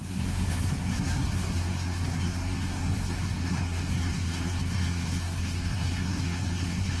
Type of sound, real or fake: fake